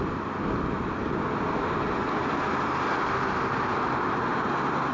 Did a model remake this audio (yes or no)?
no